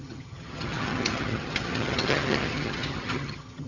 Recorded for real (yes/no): no